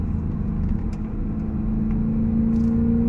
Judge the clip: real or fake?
real